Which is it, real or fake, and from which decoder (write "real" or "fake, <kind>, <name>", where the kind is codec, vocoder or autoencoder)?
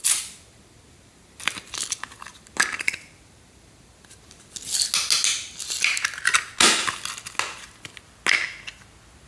real